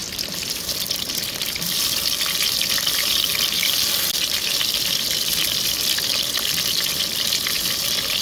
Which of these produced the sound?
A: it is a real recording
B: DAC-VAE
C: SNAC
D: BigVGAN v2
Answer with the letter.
D